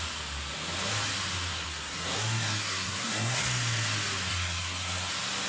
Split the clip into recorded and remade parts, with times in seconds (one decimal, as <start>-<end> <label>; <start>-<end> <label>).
0.0-1.5 recorded; 1.5-3.4 remade; 3.4-4.3 recorded; 4.3-5.1 remade; 5.1-5.5 recorded